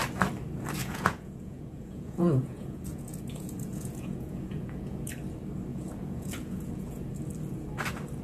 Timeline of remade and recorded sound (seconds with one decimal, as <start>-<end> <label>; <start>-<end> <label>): 0.0-0.8 recorded; 0.8-5.1 remade; 5.1-5.7 recorded; 5.7-7.0 remade; 7.0-8.2 recorded